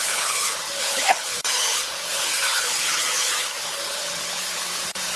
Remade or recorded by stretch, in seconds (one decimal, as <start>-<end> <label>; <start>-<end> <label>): 0.0-5.2 remade